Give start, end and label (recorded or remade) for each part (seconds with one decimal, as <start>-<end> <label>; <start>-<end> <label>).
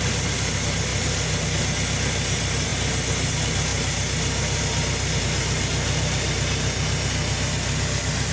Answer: 0.0-8.3 recorded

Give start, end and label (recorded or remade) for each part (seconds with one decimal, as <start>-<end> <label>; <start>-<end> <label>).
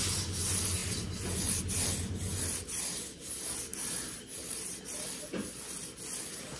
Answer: 0.0-6.6 recorded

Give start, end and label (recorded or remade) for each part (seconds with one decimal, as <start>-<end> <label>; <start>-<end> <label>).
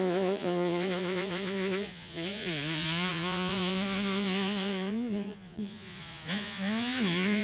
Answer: 0.0-7.4 remade